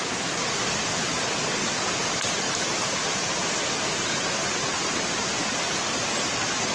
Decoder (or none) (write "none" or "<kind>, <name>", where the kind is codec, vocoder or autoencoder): none